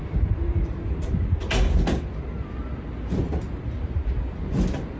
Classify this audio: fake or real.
real